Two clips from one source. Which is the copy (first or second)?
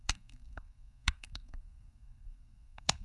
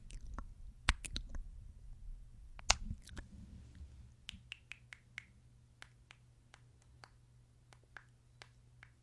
first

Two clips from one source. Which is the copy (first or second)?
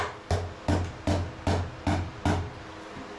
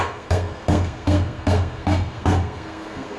second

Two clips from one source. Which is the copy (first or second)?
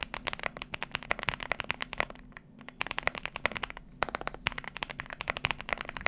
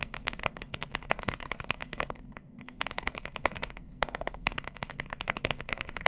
second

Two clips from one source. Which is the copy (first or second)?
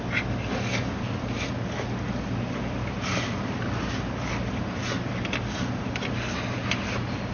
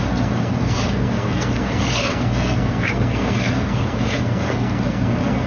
second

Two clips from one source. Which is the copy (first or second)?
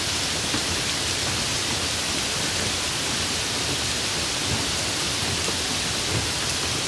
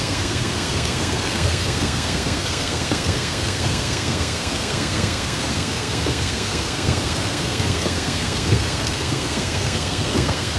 second